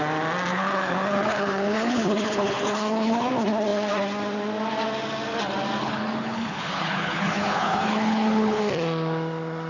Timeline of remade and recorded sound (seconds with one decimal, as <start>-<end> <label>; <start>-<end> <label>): 0.0-0.5 recorded; 0.5-3.3 remade; 3.3-5.8 recorded; 5.8-8.6 remade; 8.6-9.7 recorded